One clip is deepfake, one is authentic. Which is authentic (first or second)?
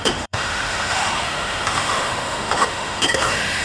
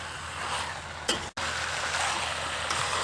second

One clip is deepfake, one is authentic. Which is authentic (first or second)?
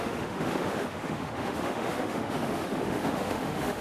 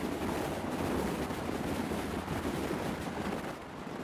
second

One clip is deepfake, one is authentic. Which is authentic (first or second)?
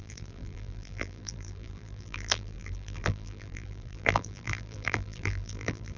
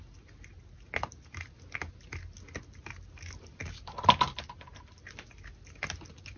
second